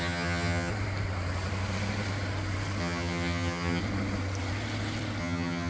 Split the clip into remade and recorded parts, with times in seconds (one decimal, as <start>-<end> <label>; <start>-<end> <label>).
0.0-0.7 remade; 0.7-2.8 recorded; 2.8-3.8 remade; 3.8-5.2 recorded; 5.2-5.7 remade